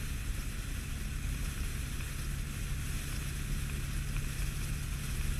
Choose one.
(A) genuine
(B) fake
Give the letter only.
A